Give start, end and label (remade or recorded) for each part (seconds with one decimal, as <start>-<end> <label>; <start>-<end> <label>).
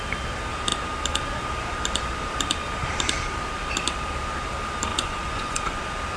0.0-4.9 recorded; 4.9-5.8 remade; 5.8-6.2 recorded